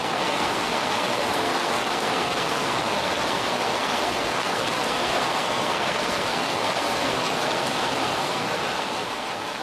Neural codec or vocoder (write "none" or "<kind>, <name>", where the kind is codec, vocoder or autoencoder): codec, SNAC